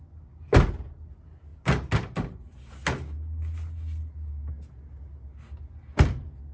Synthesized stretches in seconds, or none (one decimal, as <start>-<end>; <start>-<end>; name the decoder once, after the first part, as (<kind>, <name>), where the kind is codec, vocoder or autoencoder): none